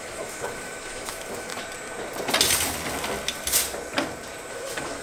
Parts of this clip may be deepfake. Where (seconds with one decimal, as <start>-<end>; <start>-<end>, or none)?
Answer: 0.0-1.5; 4.5-5.0